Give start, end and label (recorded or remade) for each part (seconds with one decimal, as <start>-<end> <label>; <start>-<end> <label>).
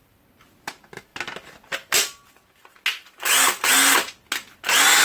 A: 0.0-5.0 recorded